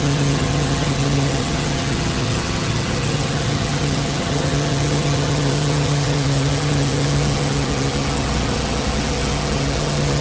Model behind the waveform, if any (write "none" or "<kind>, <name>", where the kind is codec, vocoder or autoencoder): vocoder, HiFi-GAN